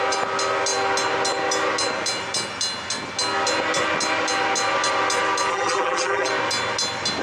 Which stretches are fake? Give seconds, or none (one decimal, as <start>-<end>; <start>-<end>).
5.5-6.3